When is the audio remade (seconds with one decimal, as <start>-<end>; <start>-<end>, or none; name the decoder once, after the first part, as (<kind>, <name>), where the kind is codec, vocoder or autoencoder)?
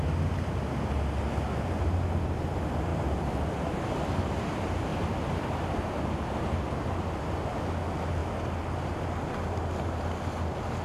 none